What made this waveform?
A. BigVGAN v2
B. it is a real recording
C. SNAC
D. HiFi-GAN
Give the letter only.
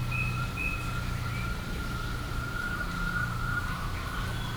B